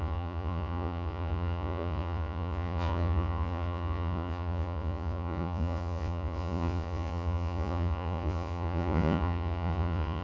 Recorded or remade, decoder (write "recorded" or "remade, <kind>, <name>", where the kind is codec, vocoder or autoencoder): remade, vocoder, Vocos